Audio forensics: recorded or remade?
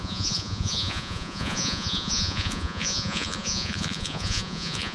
remade